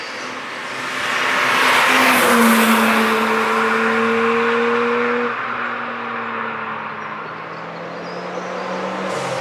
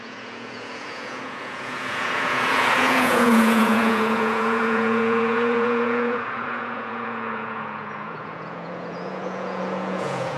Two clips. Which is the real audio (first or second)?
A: first